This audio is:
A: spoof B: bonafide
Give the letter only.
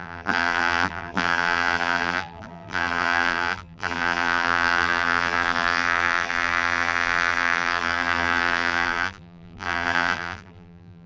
A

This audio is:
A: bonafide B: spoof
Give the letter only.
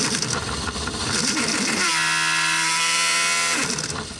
B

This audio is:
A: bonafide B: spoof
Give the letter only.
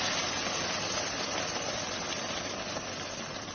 A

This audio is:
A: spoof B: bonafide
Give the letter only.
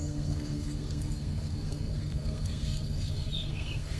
A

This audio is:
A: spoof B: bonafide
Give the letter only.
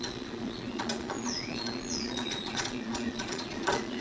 A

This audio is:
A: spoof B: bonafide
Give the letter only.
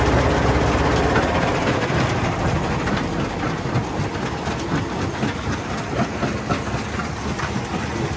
B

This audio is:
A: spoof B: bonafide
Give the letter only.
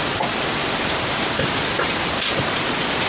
B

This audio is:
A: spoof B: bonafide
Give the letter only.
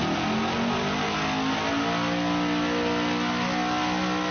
B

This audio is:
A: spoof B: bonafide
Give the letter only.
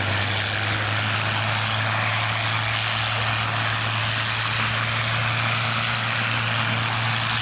B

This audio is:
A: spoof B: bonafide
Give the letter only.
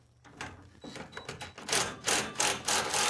B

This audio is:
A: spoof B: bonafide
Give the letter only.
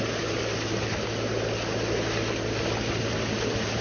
B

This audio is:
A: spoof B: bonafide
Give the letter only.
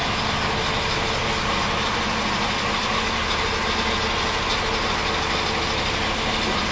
B